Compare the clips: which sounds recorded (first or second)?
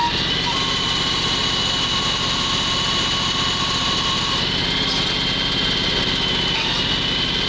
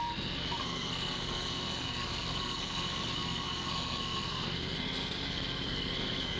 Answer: first